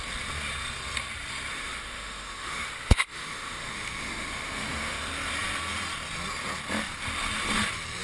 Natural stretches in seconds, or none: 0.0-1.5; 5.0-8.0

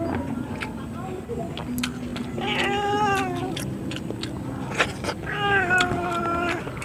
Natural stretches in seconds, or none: 0.0-6.8

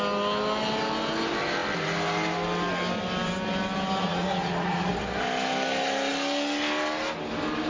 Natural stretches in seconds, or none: 0.0-4.0; 4.9-7.7